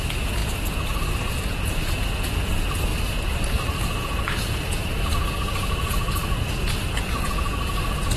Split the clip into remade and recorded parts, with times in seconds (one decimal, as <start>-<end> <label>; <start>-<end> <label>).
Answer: 0.0-2.9 remade; 2.9-3.7 recorded; 3.7-8.2 remade